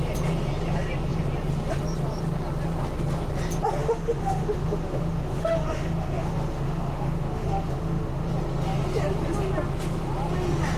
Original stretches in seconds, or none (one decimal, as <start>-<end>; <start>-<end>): 0.0-3.8; 8.3-10.8